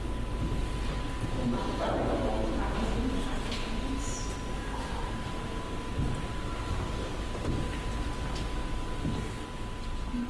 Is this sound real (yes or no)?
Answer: yes